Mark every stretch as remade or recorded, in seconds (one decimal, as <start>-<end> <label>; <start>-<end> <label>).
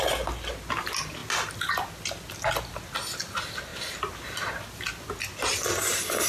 0.0-6.3 recorded